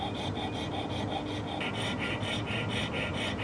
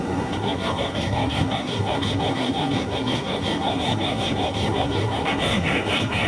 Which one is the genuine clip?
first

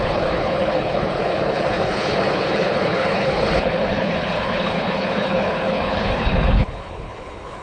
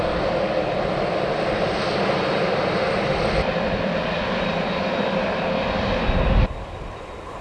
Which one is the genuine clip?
second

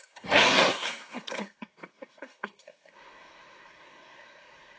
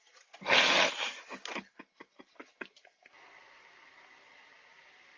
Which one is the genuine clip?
second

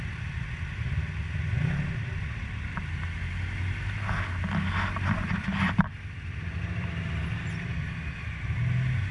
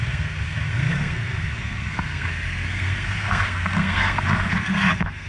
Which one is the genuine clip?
first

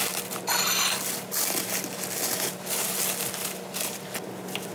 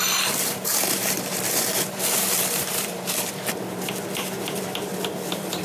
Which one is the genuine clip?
first